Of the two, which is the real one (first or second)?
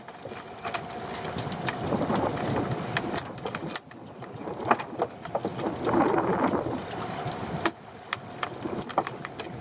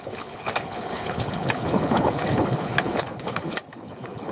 first